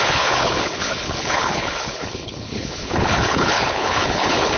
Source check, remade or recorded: remade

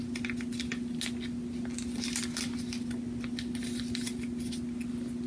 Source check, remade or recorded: recorded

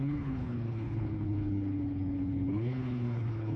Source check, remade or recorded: remade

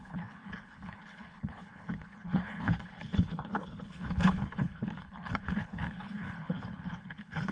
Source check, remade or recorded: remade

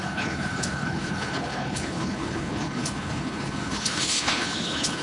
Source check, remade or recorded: remade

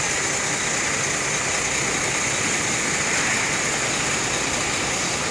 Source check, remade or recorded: recorded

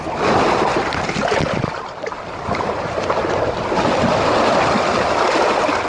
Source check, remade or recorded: recorded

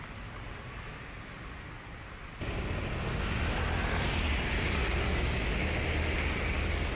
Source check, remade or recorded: recorded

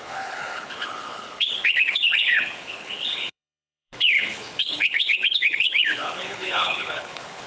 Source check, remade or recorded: remade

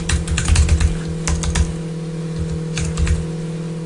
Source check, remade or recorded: recorded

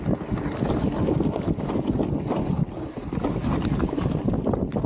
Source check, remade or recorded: recorded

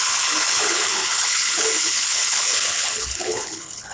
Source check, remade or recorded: remade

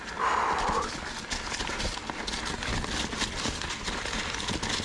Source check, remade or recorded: recorded